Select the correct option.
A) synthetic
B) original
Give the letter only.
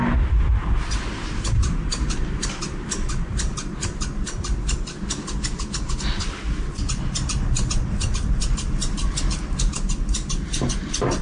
B